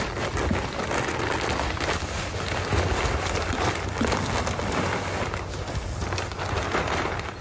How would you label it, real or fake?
real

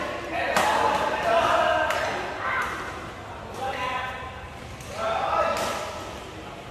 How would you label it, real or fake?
real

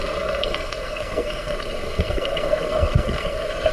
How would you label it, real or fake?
fake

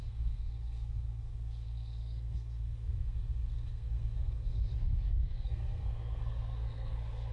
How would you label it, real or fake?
fake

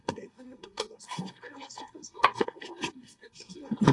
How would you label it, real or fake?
fake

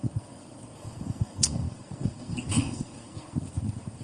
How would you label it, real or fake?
fake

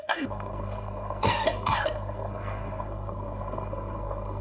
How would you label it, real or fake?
fake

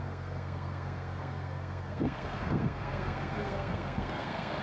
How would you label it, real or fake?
fake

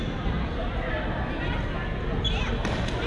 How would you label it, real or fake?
real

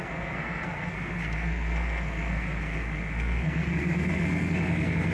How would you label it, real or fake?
fake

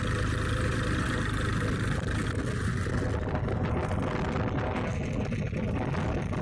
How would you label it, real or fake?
real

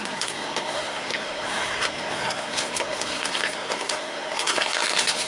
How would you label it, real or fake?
fake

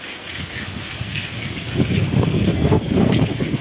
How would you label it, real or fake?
fake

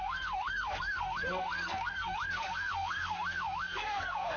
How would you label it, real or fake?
fake